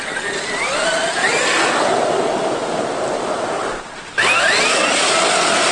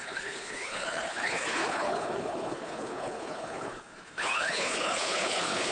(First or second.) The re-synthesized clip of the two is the second